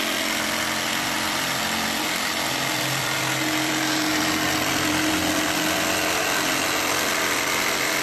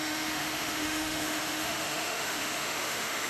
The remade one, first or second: second